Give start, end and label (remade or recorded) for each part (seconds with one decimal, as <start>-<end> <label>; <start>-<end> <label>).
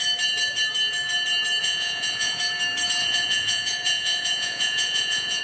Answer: 0.0-1.6 recorded; 1.6-2.4 remade; 2.4-3.0 recorded; 3.0-5.4 remade